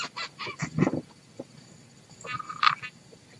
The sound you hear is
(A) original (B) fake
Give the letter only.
A